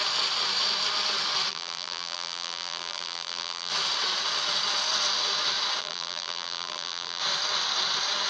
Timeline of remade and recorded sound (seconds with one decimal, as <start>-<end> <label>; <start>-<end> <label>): 0.0-1.5 recorded; 1.5-3.7 remade; 3.7-5.8 recorded; 5.8-7.2 remade; 7.2-8.3 recorded